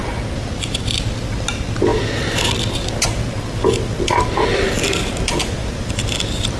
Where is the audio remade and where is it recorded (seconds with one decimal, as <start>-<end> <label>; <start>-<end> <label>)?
0.0-0.8 remade; 0.8-5.4 recorded; 5.4-6.1 remade; 6.1-6.6 recorded